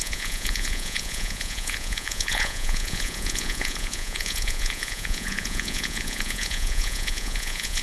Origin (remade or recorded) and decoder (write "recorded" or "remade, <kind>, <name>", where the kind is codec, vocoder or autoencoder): remade, vocoder, Vocos